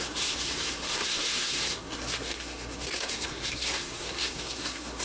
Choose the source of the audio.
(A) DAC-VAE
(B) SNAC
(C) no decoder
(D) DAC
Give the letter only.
B